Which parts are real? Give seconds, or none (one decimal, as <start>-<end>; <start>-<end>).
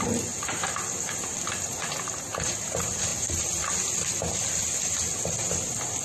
3.1-5.5